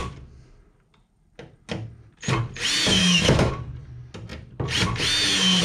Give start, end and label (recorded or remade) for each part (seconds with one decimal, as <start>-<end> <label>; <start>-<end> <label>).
0.0-3.0 recorded; 3.0-3.5 remade; 3.5-5.6 recorded

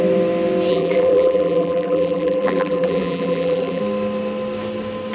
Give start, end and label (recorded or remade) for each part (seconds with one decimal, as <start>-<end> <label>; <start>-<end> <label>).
0.0-0.7 recorded; 0.7-3.8 remade; 3.8-5.1 recorded

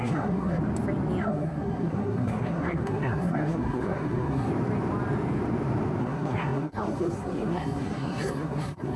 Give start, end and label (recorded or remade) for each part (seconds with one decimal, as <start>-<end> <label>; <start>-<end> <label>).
0.0-0.6 remade; 0.6-1.2 recorded; 1.2-4.5 remade; 4.5-6.0 recorded; 6.0-9.0 remade

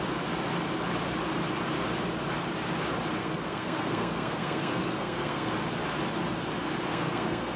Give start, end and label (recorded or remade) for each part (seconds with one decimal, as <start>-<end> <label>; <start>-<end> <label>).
0.0-3.2 recorded; 3.2-5.5 remade; 5.5-6.9 recorded; 6.9-7.6 remade

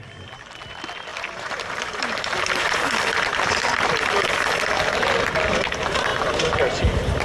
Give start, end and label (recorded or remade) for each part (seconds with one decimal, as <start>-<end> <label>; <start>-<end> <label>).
0.0-1.1 recorded; 1.1-3.5 remade; 3.5-7.2 recorded

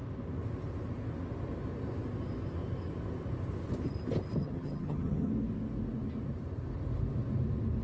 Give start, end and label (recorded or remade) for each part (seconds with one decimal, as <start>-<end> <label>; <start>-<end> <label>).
0.0-4.4 recorded; 4.4-5.3 remade; 5.3-7.8 recorded